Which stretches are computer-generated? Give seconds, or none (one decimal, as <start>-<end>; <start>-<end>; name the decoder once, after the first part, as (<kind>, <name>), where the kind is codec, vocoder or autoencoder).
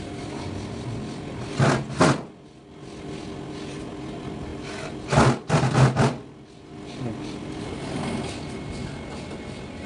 none